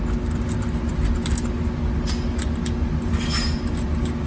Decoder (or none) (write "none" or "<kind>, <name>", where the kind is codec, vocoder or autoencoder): none